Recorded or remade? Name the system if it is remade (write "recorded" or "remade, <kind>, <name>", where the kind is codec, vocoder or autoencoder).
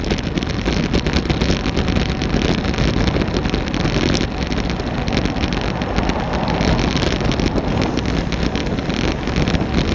recorded